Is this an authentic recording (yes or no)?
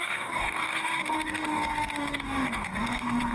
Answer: no